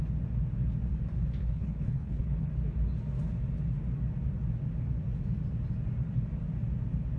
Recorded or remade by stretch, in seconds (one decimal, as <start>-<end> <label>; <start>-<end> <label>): 0.0-1.4 recorded; 1.4-2.5 remade; 2.5-7.2 recorded